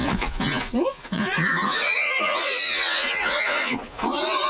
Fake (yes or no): yes